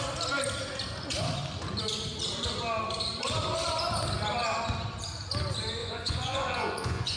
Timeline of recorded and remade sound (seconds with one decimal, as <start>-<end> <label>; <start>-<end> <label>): 0.0-5.8 recorded; 5.8-7.2 remade

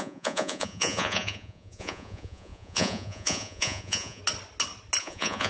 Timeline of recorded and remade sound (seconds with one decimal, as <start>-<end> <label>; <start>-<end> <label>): 0.0-4.2 remade; 4.2-5.0 recorded; 5.0-5.5 remade

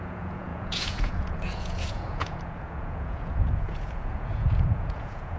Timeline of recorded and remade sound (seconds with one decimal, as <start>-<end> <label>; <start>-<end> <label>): 0.0-5.4 remade

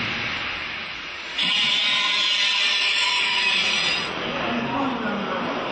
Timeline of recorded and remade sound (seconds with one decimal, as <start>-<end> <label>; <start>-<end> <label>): 0.0-0.8 recorded; 0.8-4.2 remade; 4.2-5.7 recorded

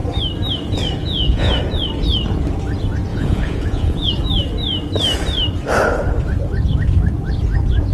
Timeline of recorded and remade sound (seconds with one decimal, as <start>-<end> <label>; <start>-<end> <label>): 0.0-1.0 recorded; 1.0-1.5 remade; 1.5-3.1 recorded; 3.1-4.1 remade; 4.1-7.9 recorded

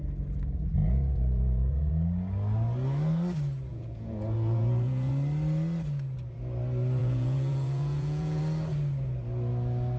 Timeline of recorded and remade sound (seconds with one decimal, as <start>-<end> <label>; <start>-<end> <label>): 0.0-0.8 recorded; 0.8-1.9 remade; 1.9-3.7 recorded; 3.7-5.1 remade; 5.1-7.0 recorded; 7.0-8.4 remade; 8.4-10.0 recorded